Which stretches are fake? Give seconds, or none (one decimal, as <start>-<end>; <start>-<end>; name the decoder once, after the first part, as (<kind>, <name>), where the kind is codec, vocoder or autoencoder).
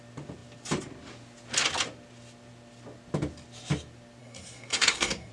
4.2-5.3 (codec, SNAC)